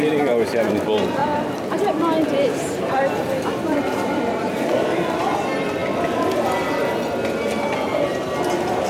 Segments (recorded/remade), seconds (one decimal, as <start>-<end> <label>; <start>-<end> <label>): 0.0-1.2 recorded; 1.2-5.2 remade; 5.2-8.9 recorded